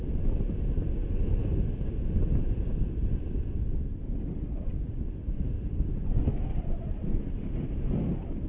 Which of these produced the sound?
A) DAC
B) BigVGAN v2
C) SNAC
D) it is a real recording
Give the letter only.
D